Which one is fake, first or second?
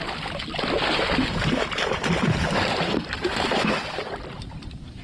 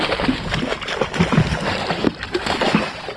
first